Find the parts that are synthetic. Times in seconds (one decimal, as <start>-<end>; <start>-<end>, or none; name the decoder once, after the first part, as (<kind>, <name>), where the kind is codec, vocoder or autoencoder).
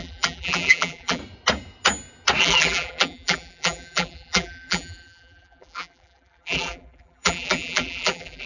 0.0-1.2 (vocoder, BigVGAN v2); 2.4-8.5